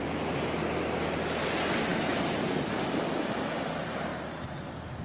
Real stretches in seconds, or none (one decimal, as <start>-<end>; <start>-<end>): 0.0-5.0